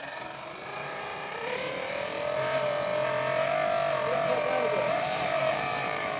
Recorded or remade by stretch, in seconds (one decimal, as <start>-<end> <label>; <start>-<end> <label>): 0.0-2.9 remade; 2.9-4.8 recorded; 4.8-6.2 remade